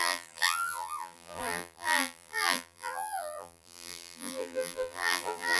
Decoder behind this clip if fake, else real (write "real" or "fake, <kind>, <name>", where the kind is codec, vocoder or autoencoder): fake, vocoder, BigVGAN v2